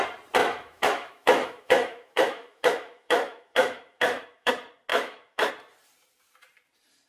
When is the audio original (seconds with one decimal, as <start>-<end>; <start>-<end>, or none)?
0.0-0.4; 4.5-4.9; 5.5-7.1